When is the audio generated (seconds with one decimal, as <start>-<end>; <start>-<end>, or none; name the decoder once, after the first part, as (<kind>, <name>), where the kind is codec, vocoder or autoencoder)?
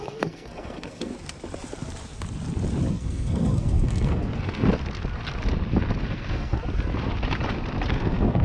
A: 0.0-1.1 (codec, SNAC); 2.9-4.7; 6.1-6.6; 7.9-8.4